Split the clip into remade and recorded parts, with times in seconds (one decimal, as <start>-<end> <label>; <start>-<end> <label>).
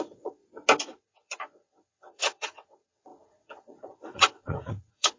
0.0-0.4 remade; 0.4-1.0 recorded; 1.0-5.2 remade